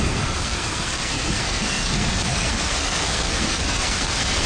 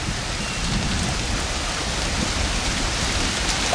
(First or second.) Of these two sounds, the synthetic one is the first